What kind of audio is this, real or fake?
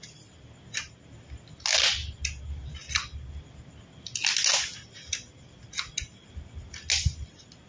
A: real